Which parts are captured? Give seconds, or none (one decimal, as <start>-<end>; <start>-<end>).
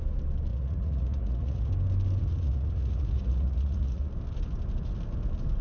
0.0-0.5; 1.7-2.2; 4.1-5.6